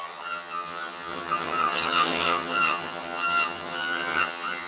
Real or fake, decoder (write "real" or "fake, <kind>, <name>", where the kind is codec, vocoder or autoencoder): fake, vocoder, HiFi-GAN